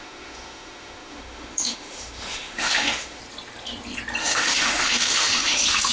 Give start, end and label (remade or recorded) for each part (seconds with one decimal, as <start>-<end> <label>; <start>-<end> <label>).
0.0-3.2 remade; 3.2-4.2 recorded; 4.2-5.9 remade